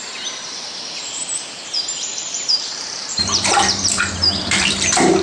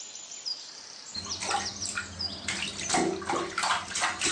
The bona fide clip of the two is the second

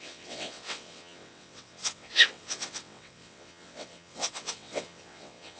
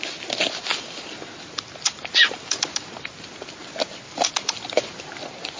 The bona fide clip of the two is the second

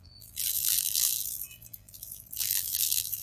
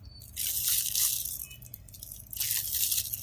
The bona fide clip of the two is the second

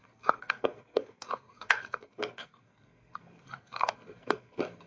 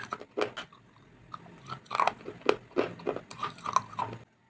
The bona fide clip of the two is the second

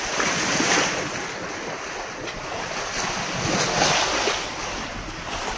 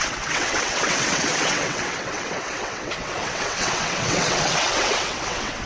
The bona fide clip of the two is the first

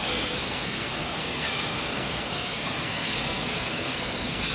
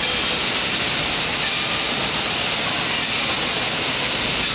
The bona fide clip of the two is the second